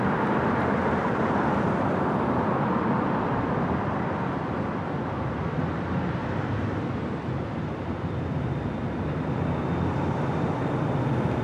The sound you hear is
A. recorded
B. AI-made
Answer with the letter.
B